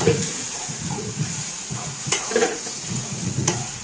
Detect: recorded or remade remade